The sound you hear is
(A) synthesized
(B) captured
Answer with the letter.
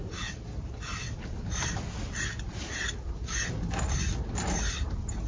B